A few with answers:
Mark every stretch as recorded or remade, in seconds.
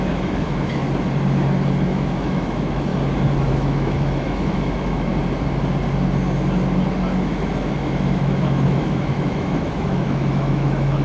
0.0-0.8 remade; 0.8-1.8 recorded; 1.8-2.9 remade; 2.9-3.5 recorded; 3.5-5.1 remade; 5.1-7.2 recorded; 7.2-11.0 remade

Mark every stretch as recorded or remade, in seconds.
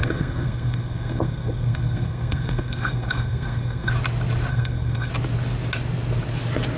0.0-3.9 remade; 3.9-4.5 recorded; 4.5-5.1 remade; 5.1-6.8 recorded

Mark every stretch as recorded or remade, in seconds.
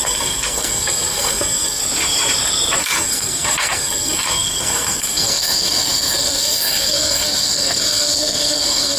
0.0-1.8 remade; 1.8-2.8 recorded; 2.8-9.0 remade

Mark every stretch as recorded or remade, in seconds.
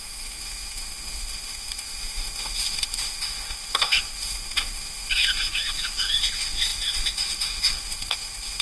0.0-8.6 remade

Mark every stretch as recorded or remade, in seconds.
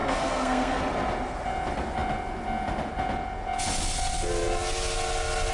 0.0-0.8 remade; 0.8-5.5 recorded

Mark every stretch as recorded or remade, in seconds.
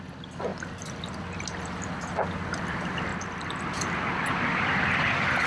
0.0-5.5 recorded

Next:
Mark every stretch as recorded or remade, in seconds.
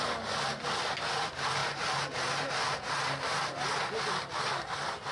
0.0-5.1 recorded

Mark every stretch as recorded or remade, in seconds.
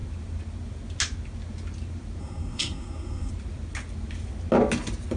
0.0-2.2 recorded; 2.2-3.3 remade; 3.3-5.2 recorded